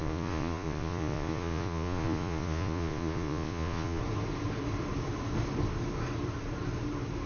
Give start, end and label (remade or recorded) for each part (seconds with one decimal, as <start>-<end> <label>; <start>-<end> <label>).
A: 0.0-4.0 remade; 4.0-7.3 recorded